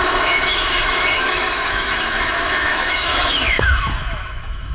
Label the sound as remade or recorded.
remade